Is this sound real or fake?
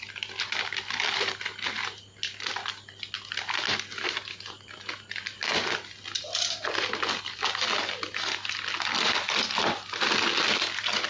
real